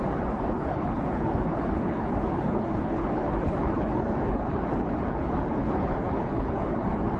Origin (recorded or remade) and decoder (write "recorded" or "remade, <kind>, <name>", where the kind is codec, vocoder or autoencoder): remade, codec, HILCodec